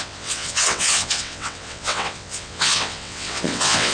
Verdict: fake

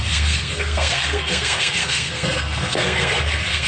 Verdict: fake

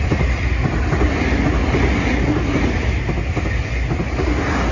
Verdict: real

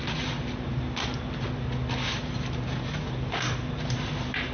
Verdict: real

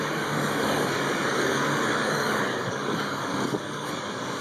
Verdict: fake